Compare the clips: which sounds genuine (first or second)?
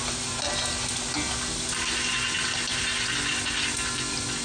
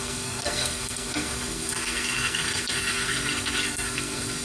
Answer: first